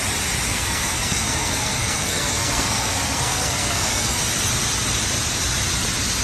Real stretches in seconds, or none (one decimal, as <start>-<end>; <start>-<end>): 0.0-0.5; 4.2-6.2